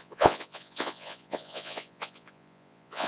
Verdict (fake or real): fake